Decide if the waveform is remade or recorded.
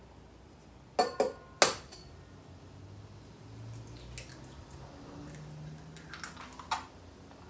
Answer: recorded